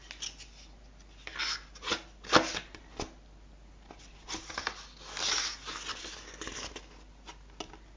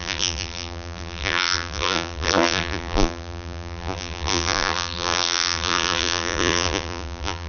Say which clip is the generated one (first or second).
second